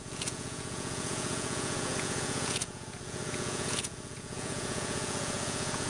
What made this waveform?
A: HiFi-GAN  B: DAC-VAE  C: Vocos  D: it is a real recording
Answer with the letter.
C